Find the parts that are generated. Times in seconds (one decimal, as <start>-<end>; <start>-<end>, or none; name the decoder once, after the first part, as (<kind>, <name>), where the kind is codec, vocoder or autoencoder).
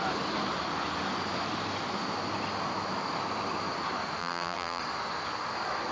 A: 4.2-4.8 (vocoder, BigVGAN v2)